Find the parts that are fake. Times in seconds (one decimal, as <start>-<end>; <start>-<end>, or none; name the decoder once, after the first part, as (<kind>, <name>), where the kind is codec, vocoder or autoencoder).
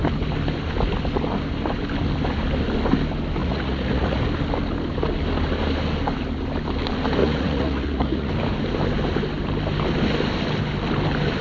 3.4-4.2 (vocoder, Vocos); 7.2-8.3